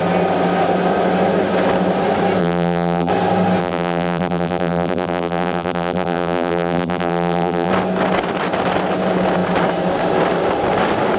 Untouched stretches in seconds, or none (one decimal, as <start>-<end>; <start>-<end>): 0.0-2.4; 3.1-3.6; 7.7-11.2

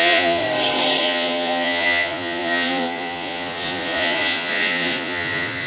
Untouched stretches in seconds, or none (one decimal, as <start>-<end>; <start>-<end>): 0.4-1.0